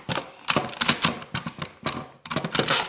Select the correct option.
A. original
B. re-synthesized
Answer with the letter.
A